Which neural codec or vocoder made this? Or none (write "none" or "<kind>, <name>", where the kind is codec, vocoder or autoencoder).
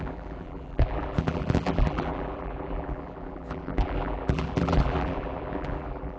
vocoder, BigVGAN v2